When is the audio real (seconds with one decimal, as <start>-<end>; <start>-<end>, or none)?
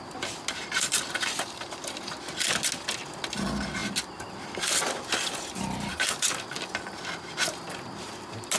0.0-3.8; 7.0-8.6